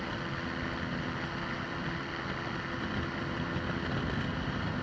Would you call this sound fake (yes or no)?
no